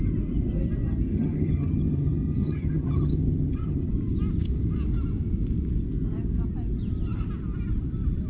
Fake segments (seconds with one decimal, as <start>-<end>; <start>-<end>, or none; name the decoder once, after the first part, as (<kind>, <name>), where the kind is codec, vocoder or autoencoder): 1.1-3.9 (vocoder, HiFi-GAN)

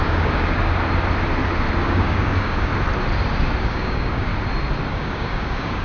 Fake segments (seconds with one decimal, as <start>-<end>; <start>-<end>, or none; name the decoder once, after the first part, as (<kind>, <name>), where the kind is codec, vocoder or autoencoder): 0.0-0.6 (codec, DAC); 1.8-2.7; 3.6-4.3; 4.9-5.8